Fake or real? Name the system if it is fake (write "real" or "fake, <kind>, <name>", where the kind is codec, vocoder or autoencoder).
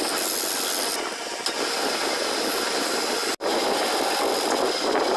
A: real